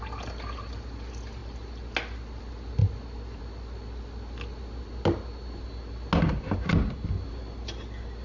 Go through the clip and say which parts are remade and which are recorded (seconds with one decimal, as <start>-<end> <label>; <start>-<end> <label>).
0.0-8.2 recorded